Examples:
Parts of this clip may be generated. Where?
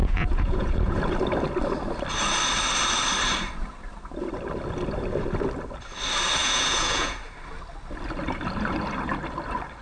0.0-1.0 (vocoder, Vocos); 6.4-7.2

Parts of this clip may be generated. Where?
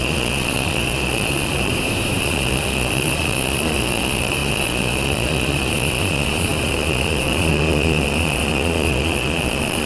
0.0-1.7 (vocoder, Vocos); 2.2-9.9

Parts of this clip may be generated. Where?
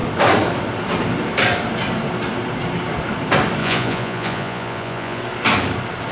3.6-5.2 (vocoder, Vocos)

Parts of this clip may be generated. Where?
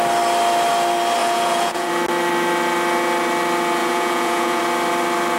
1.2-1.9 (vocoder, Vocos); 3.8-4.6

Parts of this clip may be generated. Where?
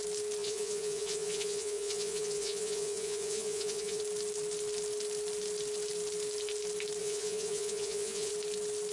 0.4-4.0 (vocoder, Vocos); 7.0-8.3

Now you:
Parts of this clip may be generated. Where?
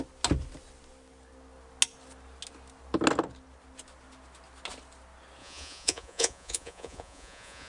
5.4-7.7 (vocoder, Vocos)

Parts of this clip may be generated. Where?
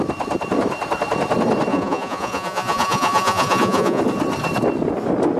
1.7-4.0 (vocoder, Vocos)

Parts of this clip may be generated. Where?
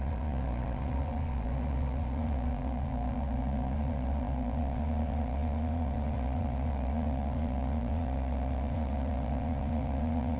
0.0-10.4 (vocoder, Vocos)